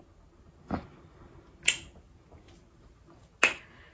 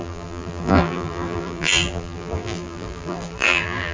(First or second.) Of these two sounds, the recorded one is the first